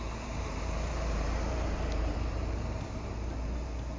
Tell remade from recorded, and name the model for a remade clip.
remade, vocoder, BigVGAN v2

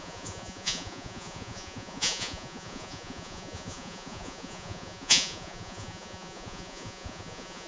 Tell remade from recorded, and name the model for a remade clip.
remade, vocoder, Vocos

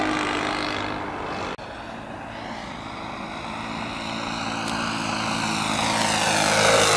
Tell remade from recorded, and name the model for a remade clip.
recorded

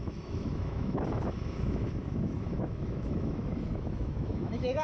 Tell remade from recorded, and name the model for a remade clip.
remade, autoencoder, DAC-VAE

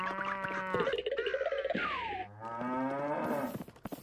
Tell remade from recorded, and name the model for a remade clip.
recorded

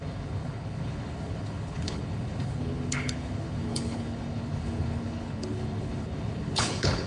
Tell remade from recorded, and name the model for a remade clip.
remade, codec, HILCodec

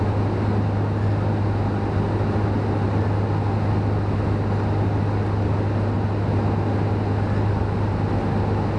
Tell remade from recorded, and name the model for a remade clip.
recorded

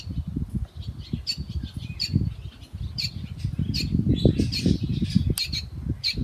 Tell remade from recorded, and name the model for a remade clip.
recorded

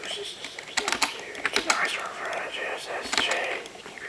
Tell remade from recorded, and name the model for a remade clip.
recorded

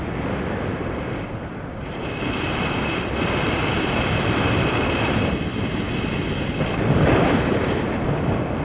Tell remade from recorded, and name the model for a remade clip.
recorded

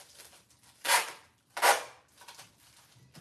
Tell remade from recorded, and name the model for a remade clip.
recorded